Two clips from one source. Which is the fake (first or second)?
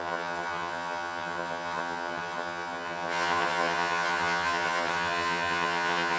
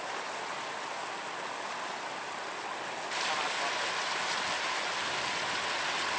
first